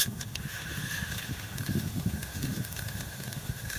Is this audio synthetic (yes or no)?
yes